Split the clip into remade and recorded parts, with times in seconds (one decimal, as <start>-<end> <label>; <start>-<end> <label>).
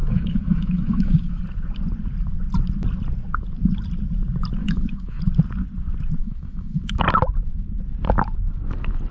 0.0-1.4 remade; 1.4-4.6 recorded; 4.6-5.2 remade; 5.2-6.2 recorded; 6.2-7.0 remade; 7.0-9.1 recorded